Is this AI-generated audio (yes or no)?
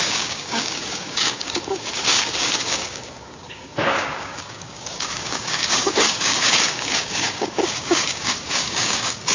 yes